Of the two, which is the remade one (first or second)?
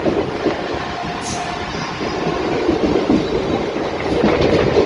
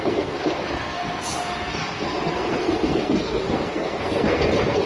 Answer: second